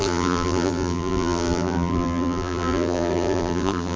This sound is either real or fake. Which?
fake